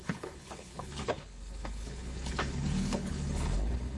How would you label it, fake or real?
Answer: fake